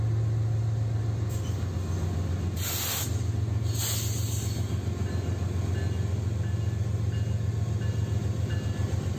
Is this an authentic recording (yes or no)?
yes